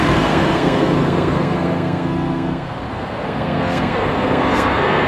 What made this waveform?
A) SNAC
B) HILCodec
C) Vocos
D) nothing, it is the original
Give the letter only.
A